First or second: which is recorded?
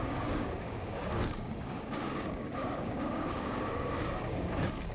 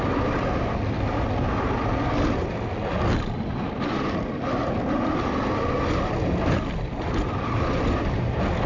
second